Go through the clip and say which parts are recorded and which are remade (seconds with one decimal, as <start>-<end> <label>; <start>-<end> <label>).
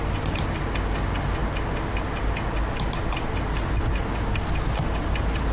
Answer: 0.0-5.5 recorded